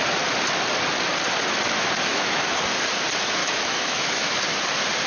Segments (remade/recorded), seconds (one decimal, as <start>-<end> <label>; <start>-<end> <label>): 0.0-2.1 recorded; 2.1-2.6 remade; 2.6-3.4 recorded; 3.4-4.3 remade; 4.3-5.1 recorded